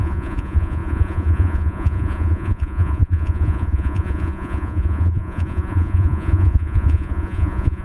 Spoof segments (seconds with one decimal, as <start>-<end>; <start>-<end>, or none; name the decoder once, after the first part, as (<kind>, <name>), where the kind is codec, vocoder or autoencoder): 0.0-7.8 (vocoder, Vocos)